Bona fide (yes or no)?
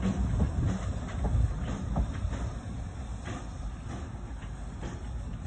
yes